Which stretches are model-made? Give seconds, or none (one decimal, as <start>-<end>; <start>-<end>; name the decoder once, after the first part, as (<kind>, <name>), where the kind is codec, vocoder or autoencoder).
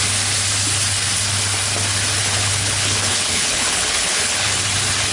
2.2-4.6 (codec, HILCodec)